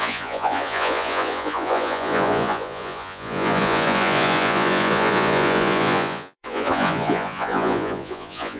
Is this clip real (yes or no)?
no